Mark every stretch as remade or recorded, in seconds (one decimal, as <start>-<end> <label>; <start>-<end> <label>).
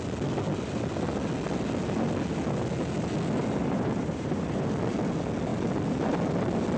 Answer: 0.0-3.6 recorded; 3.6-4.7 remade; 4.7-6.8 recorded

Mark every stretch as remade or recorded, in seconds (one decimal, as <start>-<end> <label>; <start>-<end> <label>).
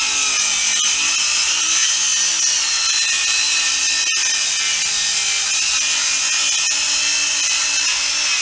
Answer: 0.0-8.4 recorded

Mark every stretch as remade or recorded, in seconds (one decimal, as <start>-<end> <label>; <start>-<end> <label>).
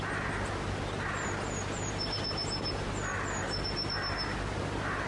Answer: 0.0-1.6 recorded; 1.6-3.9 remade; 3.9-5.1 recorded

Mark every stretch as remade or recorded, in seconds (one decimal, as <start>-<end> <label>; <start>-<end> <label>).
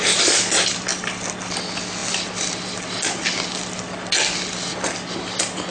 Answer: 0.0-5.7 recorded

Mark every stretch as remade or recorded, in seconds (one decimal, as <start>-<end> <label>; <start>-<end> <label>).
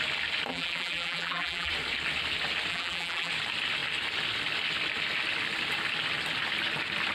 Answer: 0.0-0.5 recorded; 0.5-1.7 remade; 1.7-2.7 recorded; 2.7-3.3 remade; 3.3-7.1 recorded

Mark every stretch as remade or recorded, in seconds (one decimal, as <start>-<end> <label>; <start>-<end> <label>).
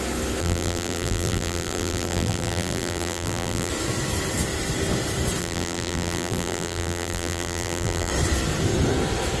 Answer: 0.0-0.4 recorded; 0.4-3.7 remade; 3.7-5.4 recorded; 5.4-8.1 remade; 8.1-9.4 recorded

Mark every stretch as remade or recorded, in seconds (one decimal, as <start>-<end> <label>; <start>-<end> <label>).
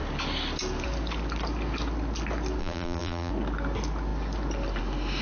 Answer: 0.0-2.6 recorded; 2.6-3.3 remade; 3.3-5.2 recorded